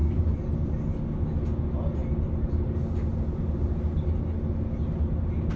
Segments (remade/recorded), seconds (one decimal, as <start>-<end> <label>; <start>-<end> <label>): 0.0-5.6 recorded